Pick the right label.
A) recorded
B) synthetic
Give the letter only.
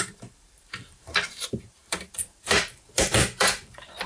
B